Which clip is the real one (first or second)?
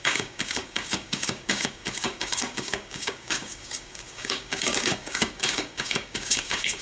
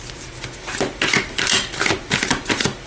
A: second